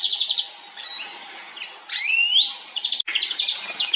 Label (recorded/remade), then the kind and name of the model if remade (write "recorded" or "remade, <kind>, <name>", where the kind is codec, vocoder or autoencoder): recorded